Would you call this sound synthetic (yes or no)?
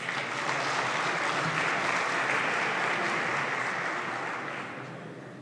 no